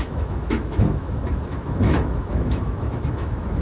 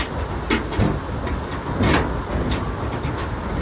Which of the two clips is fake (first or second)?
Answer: first